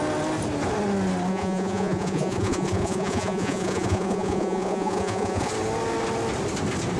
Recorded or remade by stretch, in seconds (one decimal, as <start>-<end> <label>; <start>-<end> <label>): 0.0-1.3 recorded; 1.3-5.5 remade; 5.5-7.0 recorded